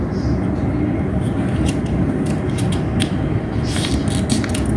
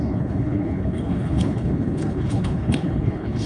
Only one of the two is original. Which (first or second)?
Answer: first